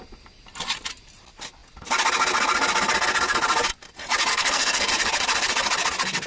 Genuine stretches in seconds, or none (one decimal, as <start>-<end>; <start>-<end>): 0.0-4.3; 4.9-6.3